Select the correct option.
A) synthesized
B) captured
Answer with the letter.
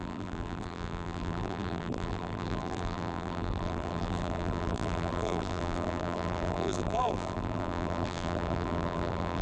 A